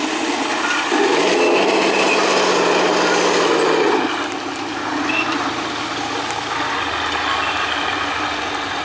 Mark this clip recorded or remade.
recorded